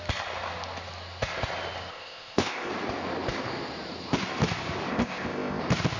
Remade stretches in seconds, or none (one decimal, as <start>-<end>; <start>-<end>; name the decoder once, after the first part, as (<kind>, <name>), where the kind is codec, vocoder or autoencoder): 1.9-2.7 (codec, ZipCodec); 4.9-5.6